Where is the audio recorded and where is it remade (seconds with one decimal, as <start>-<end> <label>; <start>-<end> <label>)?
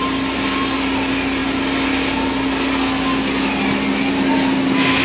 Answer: 0.0-5.0 recorded